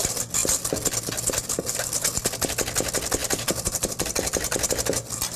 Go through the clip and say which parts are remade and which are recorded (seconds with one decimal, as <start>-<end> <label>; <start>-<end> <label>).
0.0-3.2 recorded; 3.2-4.7 remade; 4.7-5.4 recorded